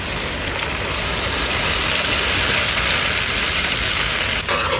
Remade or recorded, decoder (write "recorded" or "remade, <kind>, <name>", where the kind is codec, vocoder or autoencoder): recorded